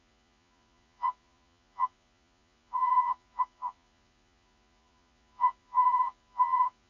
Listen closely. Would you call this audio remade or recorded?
remade